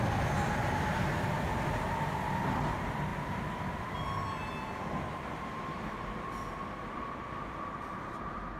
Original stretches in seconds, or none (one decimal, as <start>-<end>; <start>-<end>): 0.0-8.6